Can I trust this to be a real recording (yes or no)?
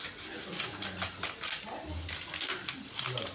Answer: yes